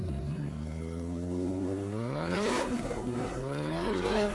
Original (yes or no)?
no